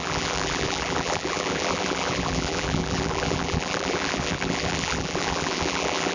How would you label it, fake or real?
fake